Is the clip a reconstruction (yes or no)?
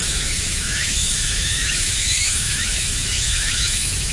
yes